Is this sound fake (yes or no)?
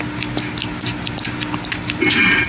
no